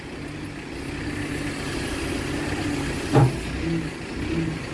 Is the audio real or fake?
real